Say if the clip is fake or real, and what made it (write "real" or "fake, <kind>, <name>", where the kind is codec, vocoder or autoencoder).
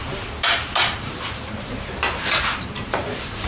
fake, vocoder, BigVGAN v2